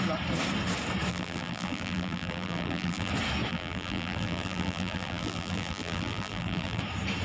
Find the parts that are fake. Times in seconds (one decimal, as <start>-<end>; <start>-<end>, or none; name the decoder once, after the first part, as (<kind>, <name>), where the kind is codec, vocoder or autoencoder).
1.1-3.1 (vocoder, BigVGAN v2); 3.5-6.8